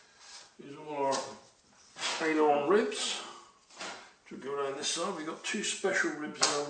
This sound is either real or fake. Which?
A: real